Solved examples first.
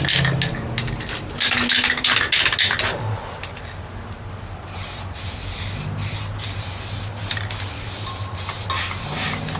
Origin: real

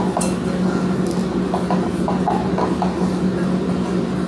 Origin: real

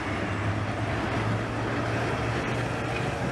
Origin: real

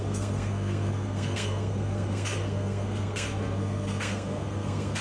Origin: fake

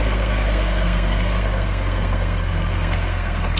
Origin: fake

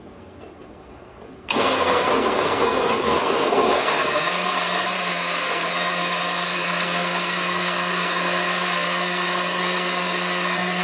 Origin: fake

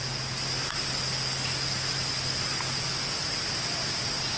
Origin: real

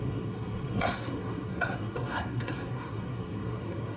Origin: fake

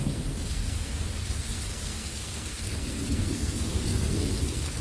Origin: fake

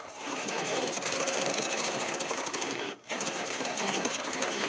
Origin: fake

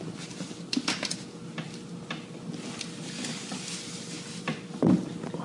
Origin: real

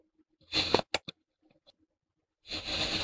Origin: real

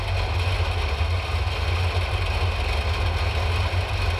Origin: real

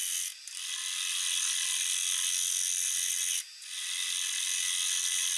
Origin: real